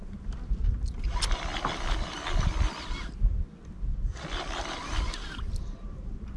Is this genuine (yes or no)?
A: yes